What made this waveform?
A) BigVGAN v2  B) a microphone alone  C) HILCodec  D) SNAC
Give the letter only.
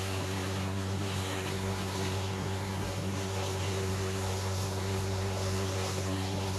D